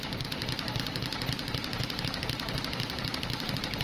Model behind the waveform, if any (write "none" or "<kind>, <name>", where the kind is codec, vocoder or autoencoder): vocoder, BigVGAN v2